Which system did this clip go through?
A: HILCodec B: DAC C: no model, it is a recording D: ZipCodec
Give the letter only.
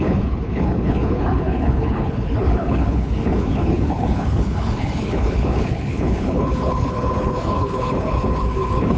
A